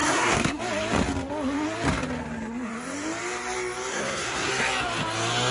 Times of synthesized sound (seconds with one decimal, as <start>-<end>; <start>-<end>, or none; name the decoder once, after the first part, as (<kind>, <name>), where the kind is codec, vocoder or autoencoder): 0.0-0.6 (codec, SNAC); 3.9-4.5